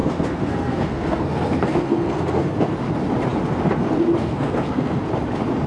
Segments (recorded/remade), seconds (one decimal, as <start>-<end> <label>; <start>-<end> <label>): 0.0-2.7 remade; 2.7-4.2 recorded; 4.2-5.0 remade; 5.0-5.7 recorded